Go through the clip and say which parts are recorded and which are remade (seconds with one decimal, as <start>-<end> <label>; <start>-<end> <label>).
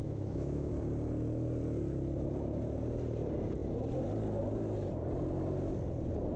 0.0-0.7 remade; 0.7-6.4 recorded